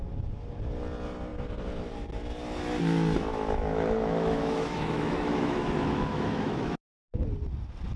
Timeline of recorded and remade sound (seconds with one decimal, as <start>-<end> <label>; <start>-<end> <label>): 0.0-3.3 recorded; 3.3-6.8 remade; 6.8-8.0 recorded